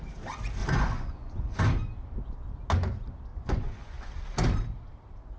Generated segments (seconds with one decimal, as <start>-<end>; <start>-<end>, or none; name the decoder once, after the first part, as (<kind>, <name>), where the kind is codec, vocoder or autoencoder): 0.6-1.6 (vocoder, Vocos); 3.3-4.1